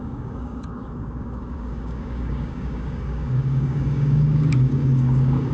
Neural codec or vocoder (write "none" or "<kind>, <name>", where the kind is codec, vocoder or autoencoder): codec, DAC